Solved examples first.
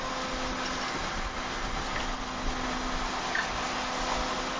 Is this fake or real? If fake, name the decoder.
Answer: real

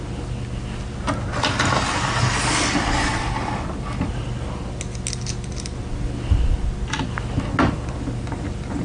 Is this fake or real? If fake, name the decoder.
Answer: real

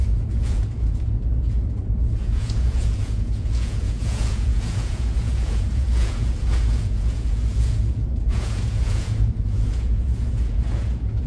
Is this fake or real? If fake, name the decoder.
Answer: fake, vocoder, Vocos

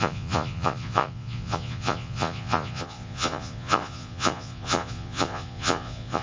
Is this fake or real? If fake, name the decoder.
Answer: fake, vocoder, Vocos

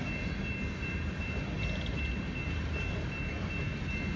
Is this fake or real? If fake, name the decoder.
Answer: real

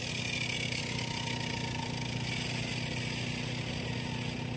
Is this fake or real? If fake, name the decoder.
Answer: real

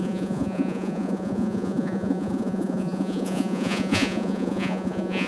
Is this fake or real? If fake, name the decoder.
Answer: fake, vocoder, Vocos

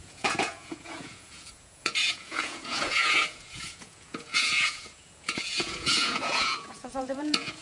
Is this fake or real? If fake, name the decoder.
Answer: fake, vocoder, Vocos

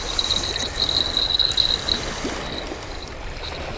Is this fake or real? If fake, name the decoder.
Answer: real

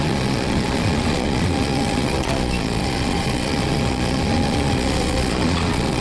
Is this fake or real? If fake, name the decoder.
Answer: fake, vocoder, Vocos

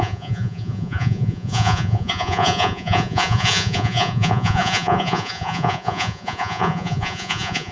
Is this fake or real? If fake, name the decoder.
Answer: fake, vocoder, Vocos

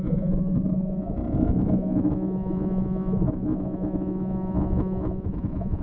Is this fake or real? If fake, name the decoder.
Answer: fake, vocoder, Vocos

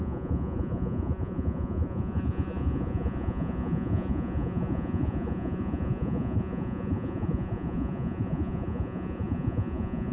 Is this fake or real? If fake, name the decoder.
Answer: fake, vocoder, Vocos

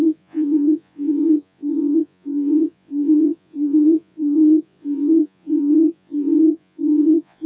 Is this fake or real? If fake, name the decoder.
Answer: fake, vocoder, Vocos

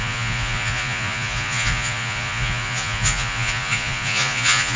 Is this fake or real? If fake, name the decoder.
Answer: fake, vocoder, Vocos